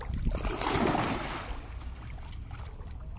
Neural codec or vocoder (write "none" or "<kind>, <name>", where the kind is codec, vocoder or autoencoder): none